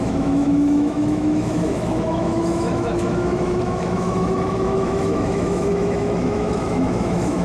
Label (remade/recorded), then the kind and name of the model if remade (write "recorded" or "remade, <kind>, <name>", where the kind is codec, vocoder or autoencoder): remade, autoencoder, DAC-VAE